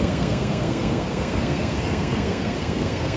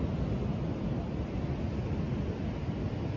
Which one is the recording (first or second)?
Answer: second